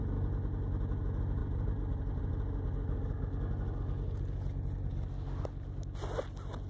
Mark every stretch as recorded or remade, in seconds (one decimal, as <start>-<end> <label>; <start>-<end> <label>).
0.0-1.4 recorded; 1.4-2.3 remade; 2.3-6.7 recorded